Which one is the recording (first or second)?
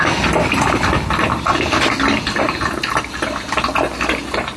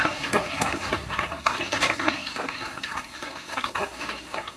first